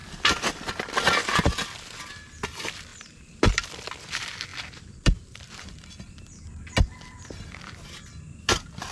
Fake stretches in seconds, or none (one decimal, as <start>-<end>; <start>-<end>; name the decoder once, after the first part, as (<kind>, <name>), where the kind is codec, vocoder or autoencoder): 2.9-4.0 (vocoder, BigVGAN v2); 4.5-5.4